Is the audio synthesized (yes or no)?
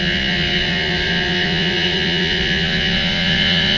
yes